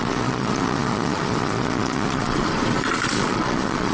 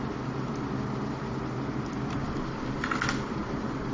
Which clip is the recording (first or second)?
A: second